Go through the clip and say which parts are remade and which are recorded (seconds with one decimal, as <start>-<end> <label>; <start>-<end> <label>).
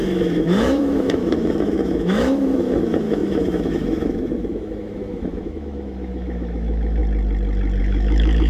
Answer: 0.0-7.0 remade; 7.0-7.8 recorded; 7.8-8.5 remade